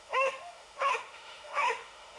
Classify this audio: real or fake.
fake